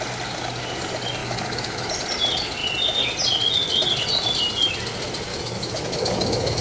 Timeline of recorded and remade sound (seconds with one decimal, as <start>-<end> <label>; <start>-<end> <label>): 0.0-1.2 recorded; 1.2-1.9 remade; 1.9-5.3 recorded; 5.3-6.6 remade